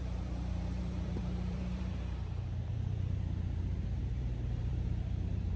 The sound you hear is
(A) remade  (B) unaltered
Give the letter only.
A